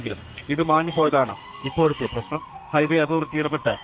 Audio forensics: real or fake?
fake